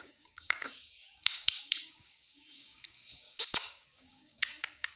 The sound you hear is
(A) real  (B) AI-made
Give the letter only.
B